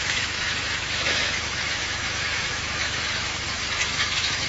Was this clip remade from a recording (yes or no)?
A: yes